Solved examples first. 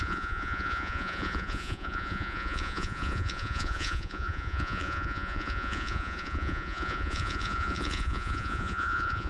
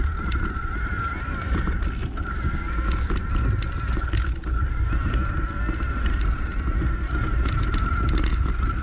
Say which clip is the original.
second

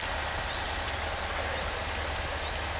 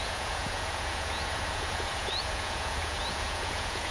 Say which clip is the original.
first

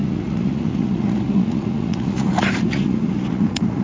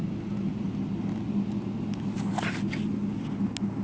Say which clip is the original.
second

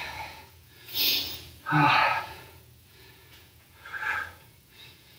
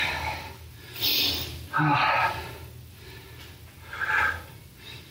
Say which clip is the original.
second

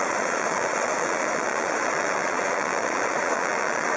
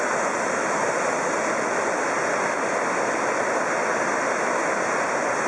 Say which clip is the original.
second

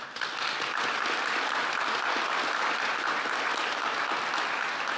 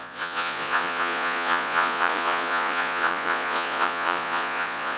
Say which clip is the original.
first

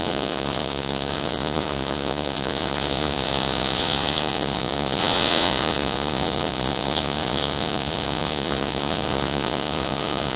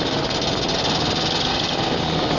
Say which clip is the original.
second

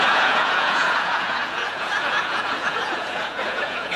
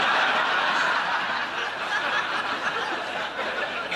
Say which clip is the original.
second